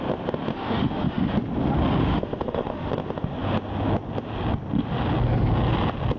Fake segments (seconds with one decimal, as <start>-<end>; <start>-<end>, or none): 0.5-1.3; 2.0-2.9